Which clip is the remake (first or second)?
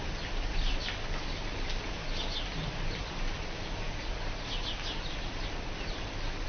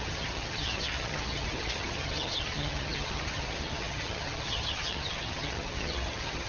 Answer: second